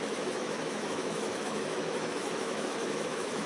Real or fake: fake